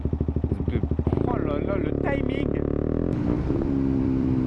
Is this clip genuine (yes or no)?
no